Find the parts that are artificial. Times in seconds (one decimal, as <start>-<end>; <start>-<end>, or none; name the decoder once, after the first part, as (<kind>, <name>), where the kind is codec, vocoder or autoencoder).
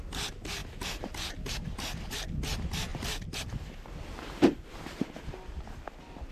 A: none